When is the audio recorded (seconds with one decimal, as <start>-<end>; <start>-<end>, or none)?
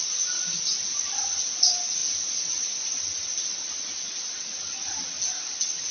0.0-5.9